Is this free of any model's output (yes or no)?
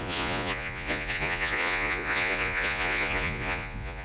no